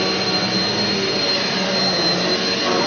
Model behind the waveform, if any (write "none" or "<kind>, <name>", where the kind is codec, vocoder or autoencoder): none